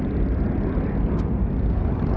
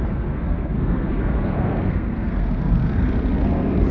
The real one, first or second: first